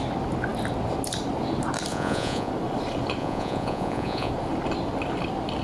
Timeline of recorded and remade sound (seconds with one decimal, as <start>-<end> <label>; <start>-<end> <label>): 0.0-1.9 recorded; 1.9-2.5 remade; 2.5-3.2 recorded; 3.2-4.3 remade; 4.3-5.6 recorded